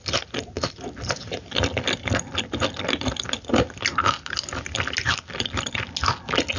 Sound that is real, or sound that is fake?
real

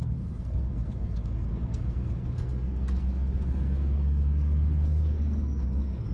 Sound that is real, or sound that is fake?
fake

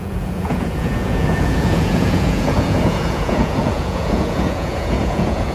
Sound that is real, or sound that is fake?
fake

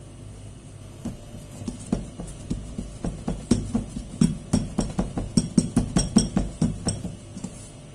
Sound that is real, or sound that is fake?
real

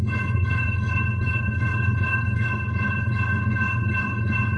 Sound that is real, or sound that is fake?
fake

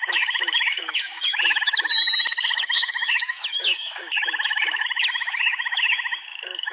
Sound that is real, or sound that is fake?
fake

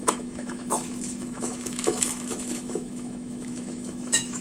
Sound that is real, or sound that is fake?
fake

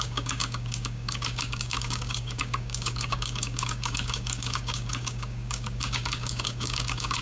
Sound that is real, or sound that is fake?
fake